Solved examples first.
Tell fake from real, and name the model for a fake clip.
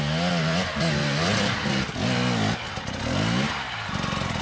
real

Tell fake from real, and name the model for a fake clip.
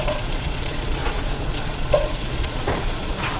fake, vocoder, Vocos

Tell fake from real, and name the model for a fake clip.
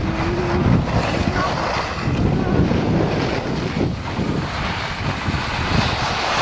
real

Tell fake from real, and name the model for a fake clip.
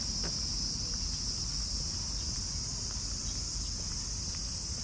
real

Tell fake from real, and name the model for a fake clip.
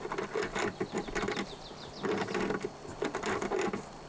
real